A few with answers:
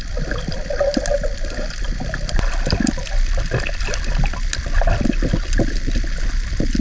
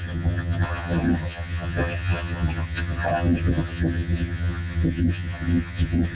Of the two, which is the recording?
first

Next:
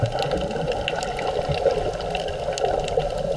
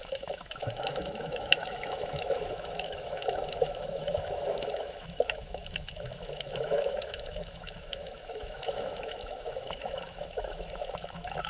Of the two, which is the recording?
first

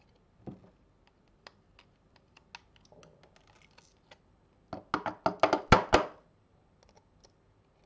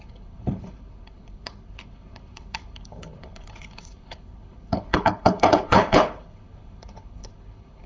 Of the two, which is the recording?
first